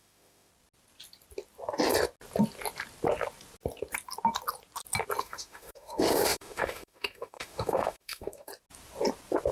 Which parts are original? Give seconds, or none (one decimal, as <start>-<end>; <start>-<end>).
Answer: 0.5-5.2; 8.5-9.5